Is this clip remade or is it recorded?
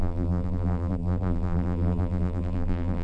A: remade